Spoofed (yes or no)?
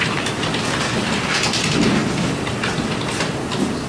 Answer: no